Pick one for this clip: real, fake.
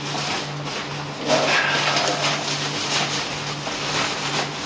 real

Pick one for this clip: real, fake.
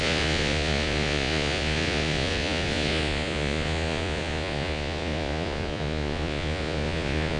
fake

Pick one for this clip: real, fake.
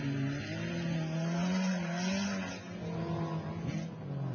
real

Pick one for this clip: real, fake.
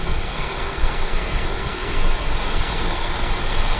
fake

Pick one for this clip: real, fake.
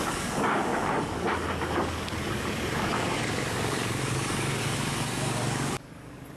fake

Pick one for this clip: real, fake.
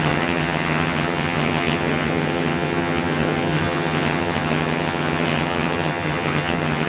fake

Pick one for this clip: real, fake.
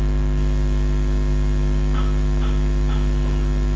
real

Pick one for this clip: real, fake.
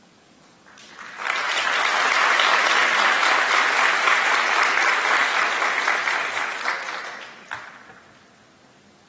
real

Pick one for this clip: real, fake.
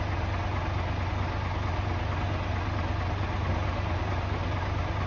real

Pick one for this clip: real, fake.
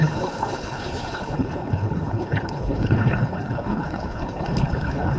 fake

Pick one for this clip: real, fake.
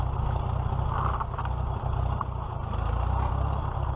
real